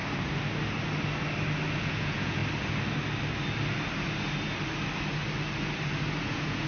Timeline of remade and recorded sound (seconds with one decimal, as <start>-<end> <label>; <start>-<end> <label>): 0.0-1.8 recorded; 1.8-2.4 remade; 2.4-6.2 recorded; 6.2-6.7 remade